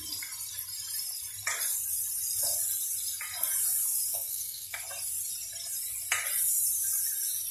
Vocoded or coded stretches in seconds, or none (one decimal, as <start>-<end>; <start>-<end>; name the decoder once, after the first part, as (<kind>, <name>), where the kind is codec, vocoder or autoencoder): 4.1-4.8 (codec, SNAC)